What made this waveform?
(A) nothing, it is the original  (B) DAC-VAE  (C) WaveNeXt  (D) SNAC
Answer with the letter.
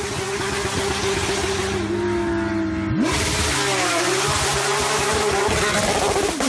A